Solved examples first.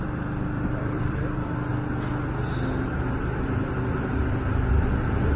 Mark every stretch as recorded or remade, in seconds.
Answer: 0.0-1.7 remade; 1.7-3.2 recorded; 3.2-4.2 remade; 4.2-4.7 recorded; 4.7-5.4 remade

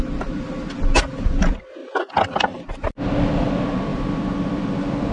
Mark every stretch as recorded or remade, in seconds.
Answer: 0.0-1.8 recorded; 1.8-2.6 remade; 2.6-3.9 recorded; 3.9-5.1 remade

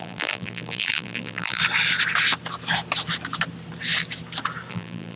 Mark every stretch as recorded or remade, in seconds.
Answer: 0.0-1.6 remade; 1.6-4.7 recorded; 4.7-5.2 remade